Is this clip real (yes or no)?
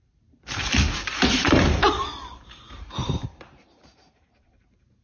no